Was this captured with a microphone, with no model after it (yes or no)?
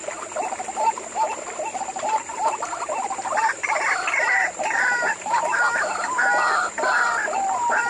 yes